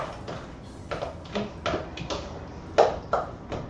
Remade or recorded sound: recorded